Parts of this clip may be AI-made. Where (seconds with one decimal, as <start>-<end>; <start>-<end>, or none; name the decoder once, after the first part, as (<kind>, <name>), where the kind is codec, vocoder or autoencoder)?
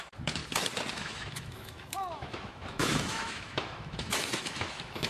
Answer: 0.0-0.4 (autoencoder, DAC-VAE); 0.9-5.1